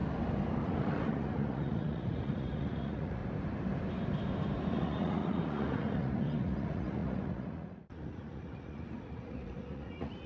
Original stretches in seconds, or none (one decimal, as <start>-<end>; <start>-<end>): 0.0-0.6; 3.2-4.7